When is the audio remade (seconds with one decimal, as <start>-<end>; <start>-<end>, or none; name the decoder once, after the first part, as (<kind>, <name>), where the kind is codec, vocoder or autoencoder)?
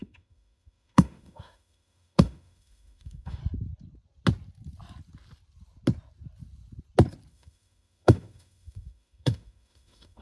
0.0-3.4 (autoencoder, DAC-VAE); 7.3-10.2